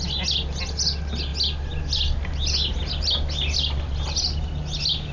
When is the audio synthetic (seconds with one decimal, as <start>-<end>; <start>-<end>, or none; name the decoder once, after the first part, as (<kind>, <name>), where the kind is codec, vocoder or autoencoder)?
none